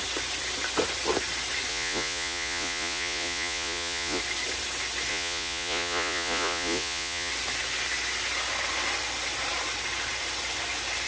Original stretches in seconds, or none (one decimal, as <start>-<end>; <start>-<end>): 0.0-1.7; 4.2-5.1; 7.3-11.1

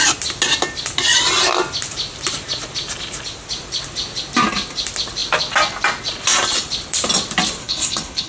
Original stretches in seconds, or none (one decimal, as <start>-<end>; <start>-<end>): 0.0-7.6

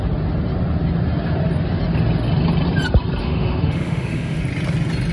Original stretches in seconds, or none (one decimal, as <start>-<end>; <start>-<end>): 0.0-3.2; 4.4-5.1

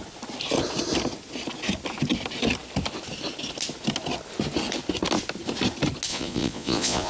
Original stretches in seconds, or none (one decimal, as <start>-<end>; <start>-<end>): 0.0-6.1

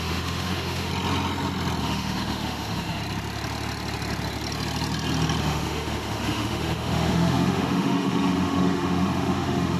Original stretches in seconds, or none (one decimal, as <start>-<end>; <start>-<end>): 0.9-1.8; 3.0-5.4

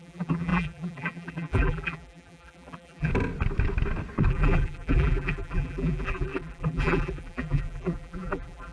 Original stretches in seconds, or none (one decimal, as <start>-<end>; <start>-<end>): 3.1-4.3